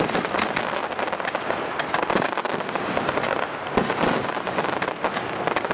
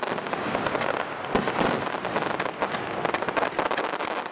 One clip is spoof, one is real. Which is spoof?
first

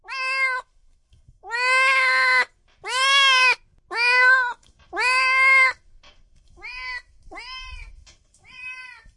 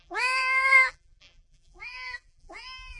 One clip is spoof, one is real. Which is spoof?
second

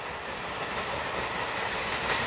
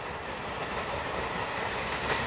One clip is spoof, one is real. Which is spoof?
second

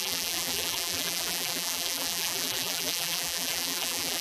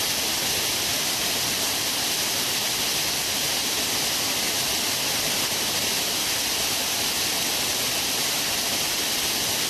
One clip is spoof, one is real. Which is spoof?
first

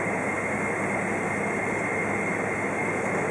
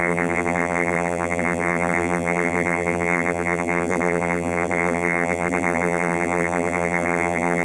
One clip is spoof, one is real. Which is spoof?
second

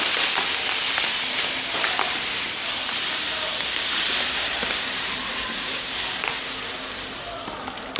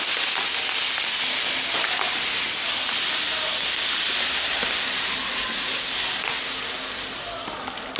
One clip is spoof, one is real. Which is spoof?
first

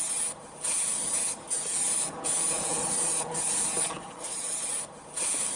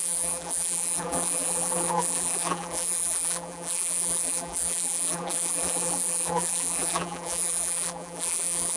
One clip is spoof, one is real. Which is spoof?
second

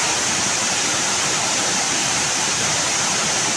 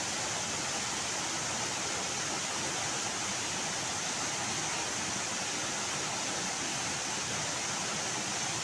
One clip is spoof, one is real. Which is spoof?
first